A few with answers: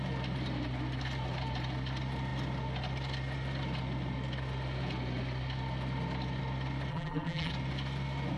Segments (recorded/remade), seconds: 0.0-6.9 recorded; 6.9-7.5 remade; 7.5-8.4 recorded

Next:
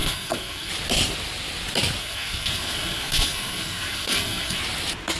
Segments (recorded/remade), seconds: 0.0-0.7 remade; 0.7-2.0 recorded; 2.0-4.6 remade; 4.6-5.2 recorded

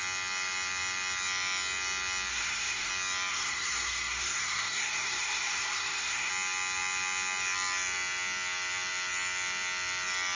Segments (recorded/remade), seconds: 0.0-2.3 recorded; 2.3-2.9 remade; 2.9-3.3 recorded; 3.3-6.3 remade; 6.3-10.3 recorded

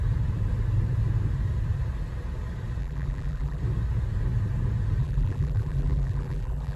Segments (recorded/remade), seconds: 0.0-2.8 recorded; 2.8-3.6 remade; 3.6-5.0 recorded; 5.0-6.8 remade

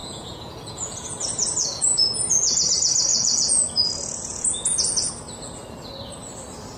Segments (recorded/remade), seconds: 0.0-2.7 remade; 2.7-3.1 recorded; 3.1-5.1 remade; 5.1-6.8 recorded

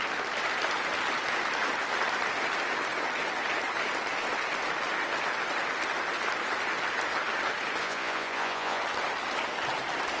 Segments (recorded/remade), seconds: 0.0-7.8 recorded; 7.8-8.8 remade; 8.8-10.2 recorded

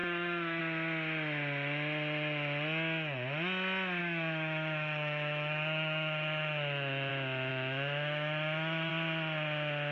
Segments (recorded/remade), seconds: 0.0-0.6 remade; 0.6-4.0 recorded; 4.0-7.1 remade; 7.1-7.5 recorded; 7.5-8.9 remade; 8.9-9.9 recorded

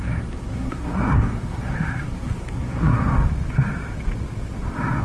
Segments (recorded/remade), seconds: 0.0-3.1 remade; 3.1-5.0 recorded